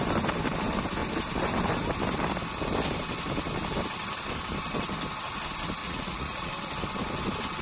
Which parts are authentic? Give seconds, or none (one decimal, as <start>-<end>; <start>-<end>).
0.0-5.8; 6.5-7.6